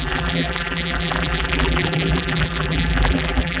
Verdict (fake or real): fake